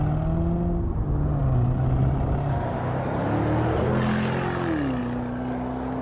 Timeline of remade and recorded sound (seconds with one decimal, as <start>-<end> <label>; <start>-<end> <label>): 0.0-6.0 recorded